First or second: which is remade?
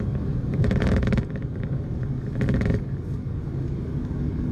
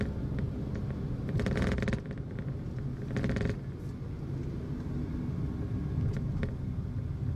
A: first